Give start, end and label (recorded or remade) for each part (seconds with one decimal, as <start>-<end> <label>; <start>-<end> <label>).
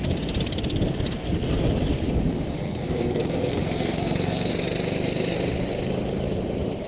0.0-2.5 recorded; 2.5-4.5 remade; 4.5-6.9 recorded